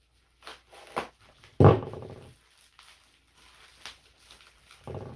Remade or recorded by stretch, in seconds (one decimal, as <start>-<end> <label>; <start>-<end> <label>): 0.0-5.2 recorded